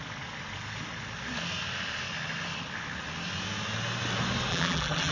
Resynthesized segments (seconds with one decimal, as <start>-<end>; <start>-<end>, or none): 4.5-5.1